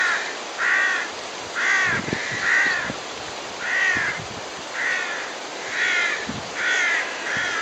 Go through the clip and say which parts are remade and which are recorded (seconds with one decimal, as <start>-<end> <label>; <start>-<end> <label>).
0.0-2.2 recorded; 2.2-4.5 remade; 4.5-7.6 recorded